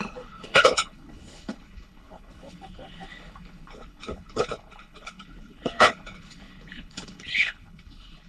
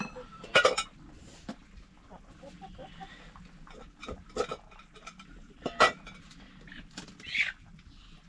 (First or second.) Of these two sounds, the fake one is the first